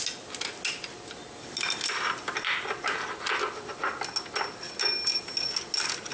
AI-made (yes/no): no